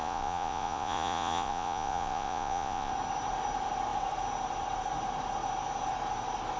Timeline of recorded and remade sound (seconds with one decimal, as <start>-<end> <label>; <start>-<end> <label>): 0.0-2.9 remade; 2.9-6.6 recorded